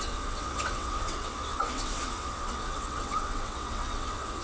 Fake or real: fake